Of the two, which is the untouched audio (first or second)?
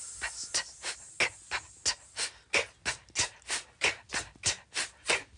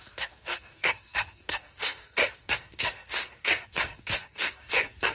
first